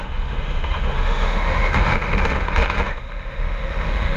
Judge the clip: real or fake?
fake